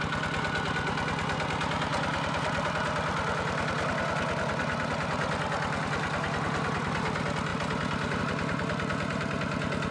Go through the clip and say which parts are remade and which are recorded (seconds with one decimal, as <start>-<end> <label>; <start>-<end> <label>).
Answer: 0.0-9.9 recorded